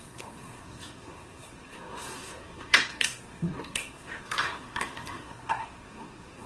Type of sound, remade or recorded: remade